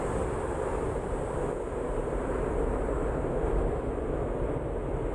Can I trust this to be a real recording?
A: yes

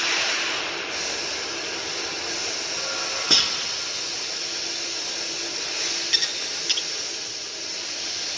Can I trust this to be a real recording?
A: yes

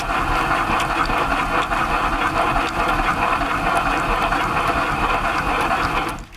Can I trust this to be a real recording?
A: yes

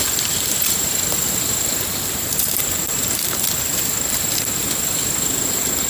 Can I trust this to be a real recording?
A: yes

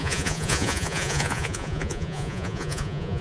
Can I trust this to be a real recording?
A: no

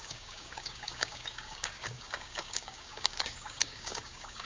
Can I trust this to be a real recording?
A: no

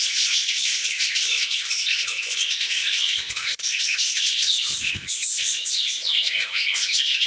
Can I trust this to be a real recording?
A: no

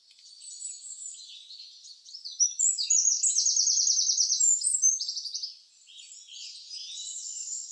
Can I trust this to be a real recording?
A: yes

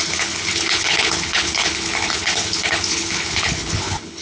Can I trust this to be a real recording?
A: no